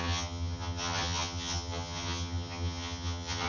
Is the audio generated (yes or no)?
yes